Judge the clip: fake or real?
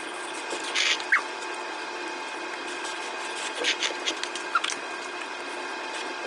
real